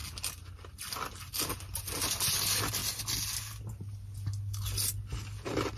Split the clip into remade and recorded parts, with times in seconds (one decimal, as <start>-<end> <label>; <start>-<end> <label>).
0.0-5.8 recorded